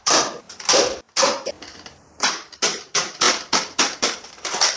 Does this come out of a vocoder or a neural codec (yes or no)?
yes